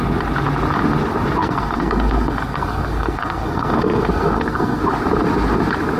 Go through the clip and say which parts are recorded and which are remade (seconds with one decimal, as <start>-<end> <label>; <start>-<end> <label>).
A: 0.0-1.4 recorded; 1.4-4.8 remade; 4.8-6.0 recorded